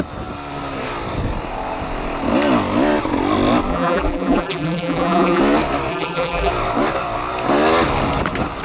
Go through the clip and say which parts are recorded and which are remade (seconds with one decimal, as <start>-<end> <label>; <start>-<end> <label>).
0.0-3.7 recorded; 3.7-5.4 remade; 5.4-5.9 recorded; 5.9-6.5 remade; 6.5-8.6 recorded